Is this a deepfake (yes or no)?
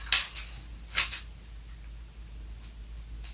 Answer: no